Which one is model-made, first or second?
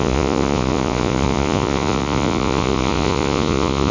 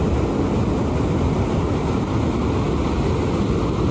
first